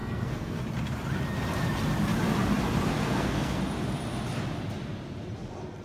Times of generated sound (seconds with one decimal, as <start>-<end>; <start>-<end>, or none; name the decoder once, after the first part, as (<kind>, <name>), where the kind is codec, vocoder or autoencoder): 0.0-0.6 (codec, SNAC); 3.0-3.6